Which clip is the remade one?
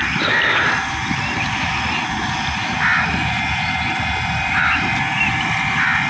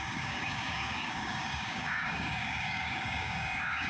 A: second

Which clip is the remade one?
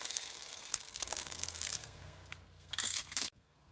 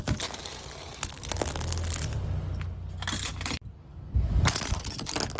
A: first